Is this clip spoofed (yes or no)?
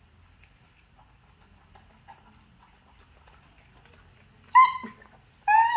no